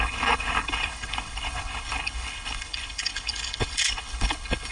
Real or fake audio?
fake